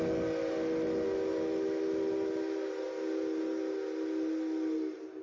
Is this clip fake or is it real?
real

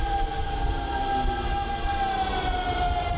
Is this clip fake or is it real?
real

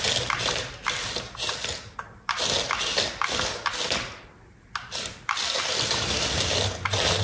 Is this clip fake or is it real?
real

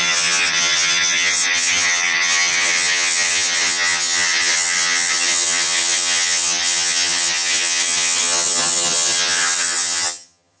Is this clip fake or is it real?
fake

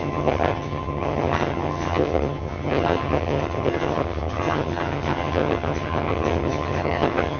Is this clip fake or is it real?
fake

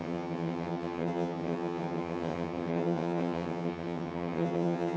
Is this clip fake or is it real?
fake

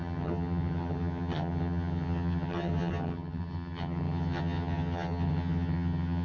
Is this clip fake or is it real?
fake